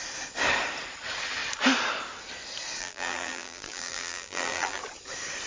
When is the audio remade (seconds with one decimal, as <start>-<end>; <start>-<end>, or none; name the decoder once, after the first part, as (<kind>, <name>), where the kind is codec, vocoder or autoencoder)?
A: 2.8-4.8 (vocoder, BigVGAN v2)